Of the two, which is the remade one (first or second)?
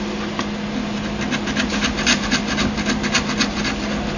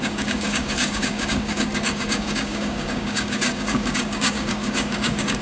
second